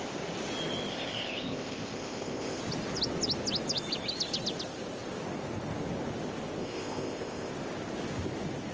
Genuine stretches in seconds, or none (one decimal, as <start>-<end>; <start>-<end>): 0.0-0.9; 2.6-6.6; 7.5-8.7

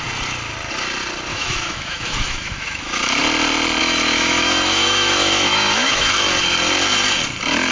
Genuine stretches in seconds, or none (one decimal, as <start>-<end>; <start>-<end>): 0.0-1.3; 3.2-3.8; 6.1-7.7

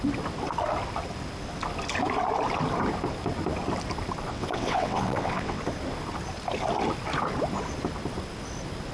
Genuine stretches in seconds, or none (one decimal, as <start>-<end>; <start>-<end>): 0.0-4.3; 5.6-8.9

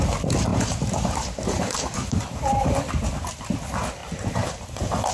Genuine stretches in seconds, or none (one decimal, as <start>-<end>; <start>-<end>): 0.0-0.5; 3.0-4.0

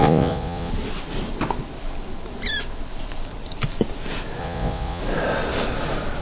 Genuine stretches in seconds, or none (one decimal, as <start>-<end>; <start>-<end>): 0.7-4.4; 5.0-6.2

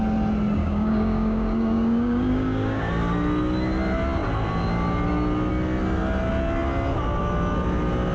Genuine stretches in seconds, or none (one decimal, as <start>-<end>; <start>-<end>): 0.0-0.6; 2.9-8.1

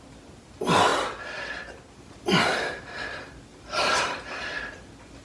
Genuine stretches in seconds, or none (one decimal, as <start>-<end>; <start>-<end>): 0.0-2.5; 3.0-3.5; 4.4-5.2

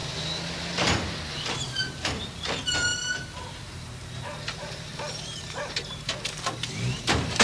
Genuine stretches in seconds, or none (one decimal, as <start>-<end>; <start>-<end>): 0.0-1.5